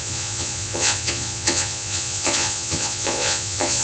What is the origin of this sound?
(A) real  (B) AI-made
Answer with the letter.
B